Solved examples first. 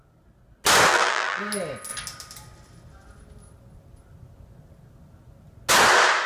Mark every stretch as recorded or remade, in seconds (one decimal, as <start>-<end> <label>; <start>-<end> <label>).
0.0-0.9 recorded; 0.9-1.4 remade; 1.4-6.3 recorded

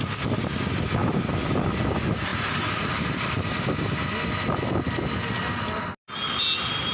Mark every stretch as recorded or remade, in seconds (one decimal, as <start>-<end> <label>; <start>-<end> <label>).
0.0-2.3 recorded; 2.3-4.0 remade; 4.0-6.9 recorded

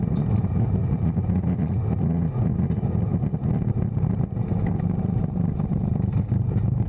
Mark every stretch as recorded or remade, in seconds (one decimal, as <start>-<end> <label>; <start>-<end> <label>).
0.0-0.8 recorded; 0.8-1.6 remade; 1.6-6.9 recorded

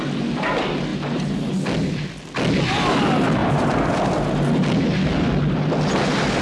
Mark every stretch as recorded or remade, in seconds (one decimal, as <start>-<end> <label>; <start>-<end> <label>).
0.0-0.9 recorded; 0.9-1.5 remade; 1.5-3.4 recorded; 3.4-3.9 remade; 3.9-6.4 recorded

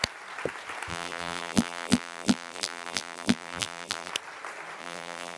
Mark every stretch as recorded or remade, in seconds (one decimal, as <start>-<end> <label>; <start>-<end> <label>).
0.0-0.9 recorded; 0.9-4.1 remade; 4.1-4.8 recorded; 4.8-5.4 remade

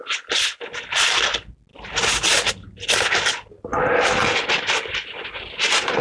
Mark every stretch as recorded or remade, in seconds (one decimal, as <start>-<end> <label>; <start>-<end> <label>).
0.0-6.0 recorded

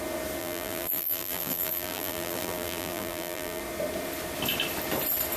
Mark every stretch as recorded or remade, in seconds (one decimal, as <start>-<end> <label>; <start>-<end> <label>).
0.0-0.4 recorded; 0.4-3.6 remade; 3.6-5.4 recorded

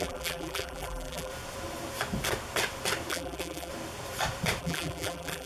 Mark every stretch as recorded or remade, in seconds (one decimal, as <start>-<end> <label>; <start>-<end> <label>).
0.0-1.3 remade; 1.3-3.1 recorded; 3.1-3.7 remade; 3.7-4.6 recorded; 4.6-5.5 remade